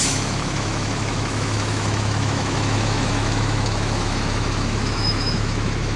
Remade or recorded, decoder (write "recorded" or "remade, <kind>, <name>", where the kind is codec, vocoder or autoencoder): remade, autoencoder, DAC-VAE